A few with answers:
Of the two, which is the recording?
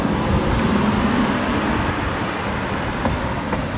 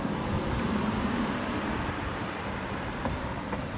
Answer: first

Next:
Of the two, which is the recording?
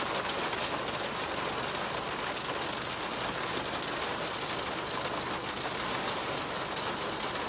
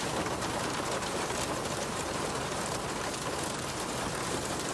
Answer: first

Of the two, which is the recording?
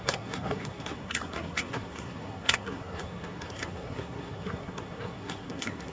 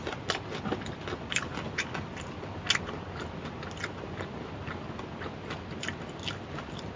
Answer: second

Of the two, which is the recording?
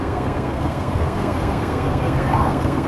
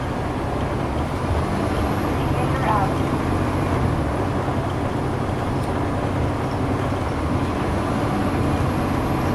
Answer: second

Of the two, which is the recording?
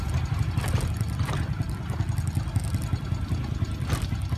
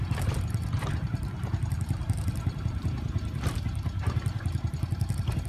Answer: first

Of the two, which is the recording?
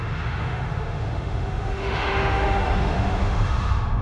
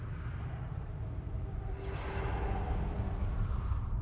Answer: second